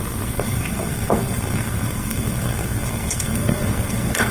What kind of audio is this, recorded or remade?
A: remade